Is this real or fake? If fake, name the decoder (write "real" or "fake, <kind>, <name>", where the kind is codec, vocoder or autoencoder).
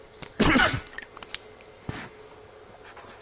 real